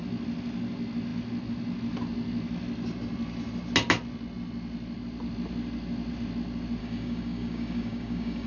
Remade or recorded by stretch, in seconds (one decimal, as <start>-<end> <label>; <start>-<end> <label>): 0.0-6.8 recorded; 6.8-8.5 remade